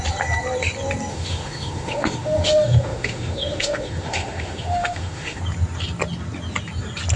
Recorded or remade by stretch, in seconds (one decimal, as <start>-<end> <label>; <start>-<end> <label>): 0.0-1.1 recorded; 1.1-5.4 remade; 5.4-7.2 recorded

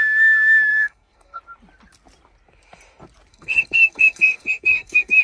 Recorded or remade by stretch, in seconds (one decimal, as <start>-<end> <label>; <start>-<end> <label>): 0.0-0.7 recorded; 0.7-1.4 remade; 1.4-3.3 recorded; 3.3-5.2 remade

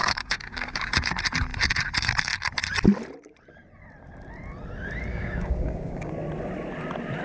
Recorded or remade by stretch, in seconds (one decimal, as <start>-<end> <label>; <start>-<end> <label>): 0.0-1.1 remade; 1.1-5.1 recorded; 5.1-6.1 remade; 6.1-7.2 recorded

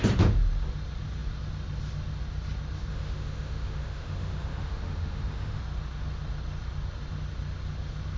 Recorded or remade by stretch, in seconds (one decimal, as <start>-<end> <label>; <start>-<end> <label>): 0.0-2.9 recorded; 2.9-5.6 remade; 5.6-8.2 recorded

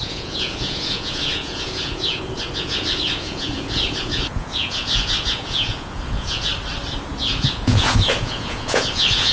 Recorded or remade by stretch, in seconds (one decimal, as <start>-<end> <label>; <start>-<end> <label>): 0.0-6.5 remade; 6.5-7.2 recorded; 7.2-9.3 remade

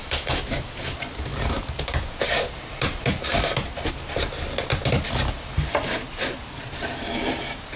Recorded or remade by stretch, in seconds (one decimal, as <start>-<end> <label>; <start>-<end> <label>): 0.0-0.9 remade; 0.9-7.8 recorded

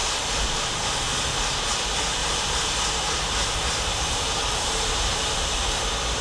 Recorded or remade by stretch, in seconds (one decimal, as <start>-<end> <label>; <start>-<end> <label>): 0.0-2.2 recorded; 2.2-2.8 remade; 2.8-3.9 recorded; 3.9-5.6 remade; 5.6-6.2 recorded